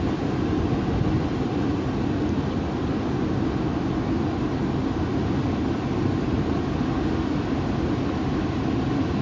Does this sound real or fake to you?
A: real